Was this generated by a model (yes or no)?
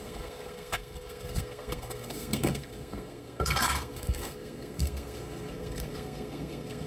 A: yes